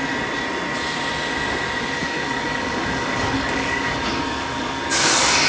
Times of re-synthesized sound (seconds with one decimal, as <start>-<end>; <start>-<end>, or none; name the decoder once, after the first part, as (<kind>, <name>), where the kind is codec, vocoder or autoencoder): 2.0-5.5 (codec, DAC)